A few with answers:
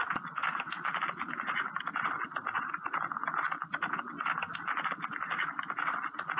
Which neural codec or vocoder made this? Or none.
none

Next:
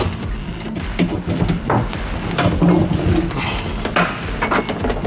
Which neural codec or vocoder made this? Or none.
none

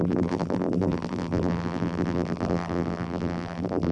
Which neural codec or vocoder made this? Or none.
vocoder, BigVGAN v2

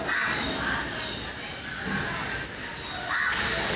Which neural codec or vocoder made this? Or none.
none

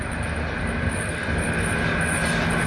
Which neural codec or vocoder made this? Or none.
none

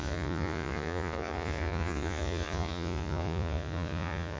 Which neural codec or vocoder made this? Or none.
vocoder, Vocos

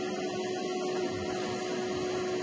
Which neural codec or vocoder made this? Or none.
none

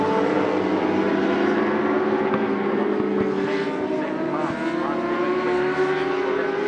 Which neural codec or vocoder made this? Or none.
none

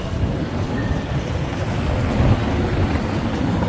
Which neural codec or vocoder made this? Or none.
none